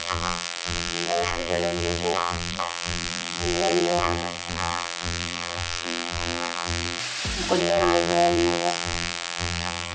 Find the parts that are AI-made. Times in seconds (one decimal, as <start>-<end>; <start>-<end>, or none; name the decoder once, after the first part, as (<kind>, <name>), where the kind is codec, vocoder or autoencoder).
0.0-7.0 (vocoder, BigVGAN v2); 7.6-9.9